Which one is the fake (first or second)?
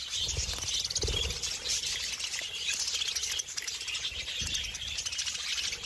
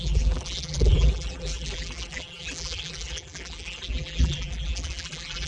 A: second